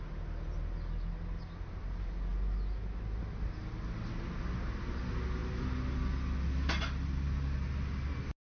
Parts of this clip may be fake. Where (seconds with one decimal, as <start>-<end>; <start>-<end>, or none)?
none